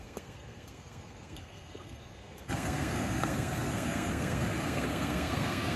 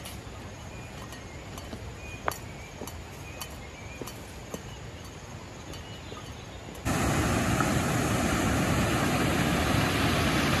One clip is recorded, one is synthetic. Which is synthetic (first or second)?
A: first